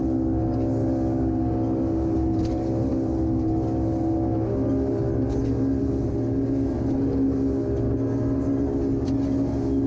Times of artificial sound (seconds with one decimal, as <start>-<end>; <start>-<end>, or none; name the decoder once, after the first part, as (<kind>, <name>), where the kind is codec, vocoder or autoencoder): none